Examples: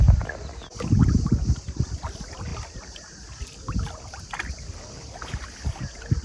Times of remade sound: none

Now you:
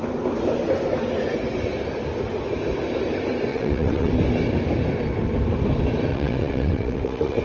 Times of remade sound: 3.5-4.1 (vocoder, WaveNeXt); 6.1-7.4

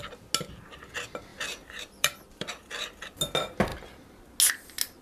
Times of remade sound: 1.3-2.8 (vocoder, BigVGAN v2)